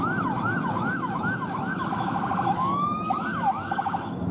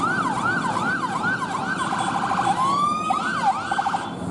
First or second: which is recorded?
second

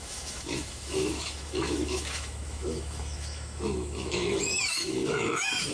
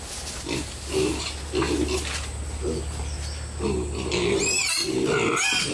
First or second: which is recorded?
second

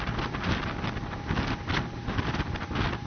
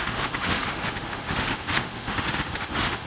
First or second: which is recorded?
first